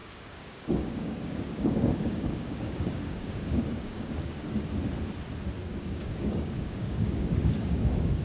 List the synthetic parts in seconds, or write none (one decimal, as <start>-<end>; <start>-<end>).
0.0-4.5; 5.7-8.2

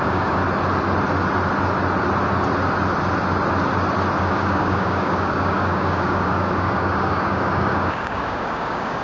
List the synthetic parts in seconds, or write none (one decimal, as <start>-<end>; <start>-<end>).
0.0-0.4; 4.2-9.0

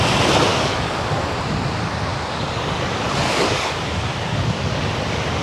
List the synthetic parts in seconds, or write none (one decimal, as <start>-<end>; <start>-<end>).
0.5-1.0; 2.1-4.9

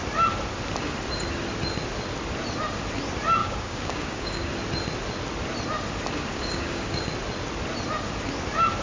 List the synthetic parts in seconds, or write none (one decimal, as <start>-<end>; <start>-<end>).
3.4-4.5; 6.3-7.0

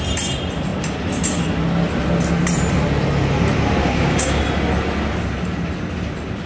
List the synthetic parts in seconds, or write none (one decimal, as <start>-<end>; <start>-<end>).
3.8-4.4

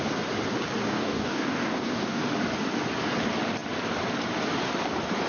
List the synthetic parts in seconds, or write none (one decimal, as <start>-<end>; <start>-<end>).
0.8-2.2